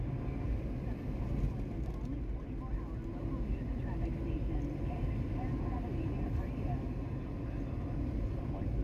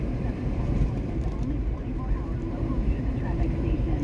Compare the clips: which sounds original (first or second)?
first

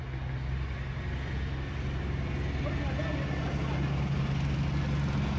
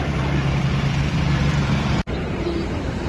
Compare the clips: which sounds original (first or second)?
first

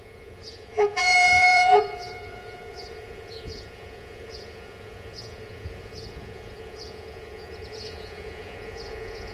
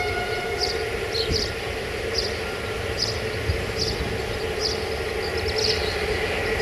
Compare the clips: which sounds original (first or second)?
second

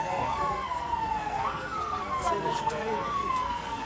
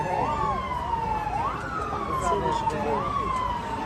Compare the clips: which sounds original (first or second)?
second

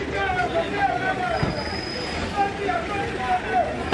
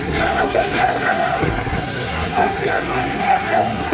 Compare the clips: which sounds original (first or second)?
first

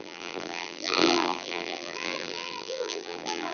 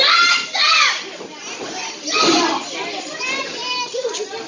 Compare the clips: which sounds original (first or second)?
second